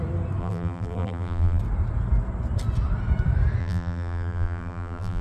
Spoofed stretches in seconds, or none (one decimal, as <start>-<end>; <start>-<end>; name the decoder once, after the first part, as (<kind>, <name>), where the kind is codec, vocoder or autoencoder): 0.4-1.6 (vocoder, BigVGAN v2); 3.6-5.2

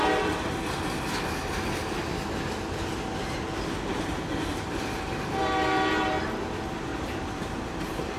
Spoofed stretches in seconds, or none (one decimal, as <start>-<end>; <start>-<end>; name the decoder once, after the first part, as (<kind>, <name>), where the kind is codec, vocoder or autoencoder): 6.9-8.2 (vocoder, BigVGAN v2)

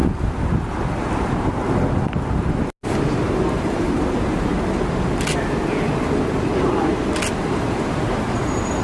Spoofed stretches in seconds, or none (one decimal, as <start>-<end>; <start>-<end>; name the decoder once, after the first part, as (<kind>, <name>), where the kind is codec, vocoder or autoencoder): 1.0-1.6 (vocoder, BigVGAN v2); 3.1-4.5; 7.5-8.8